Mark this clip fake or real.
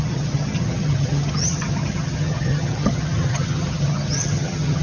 fake